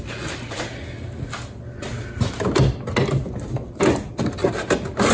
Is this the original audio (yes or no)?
yes